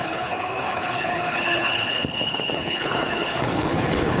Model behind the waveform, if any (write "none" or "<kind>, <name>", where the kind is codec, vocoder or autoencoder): codec, HILCodec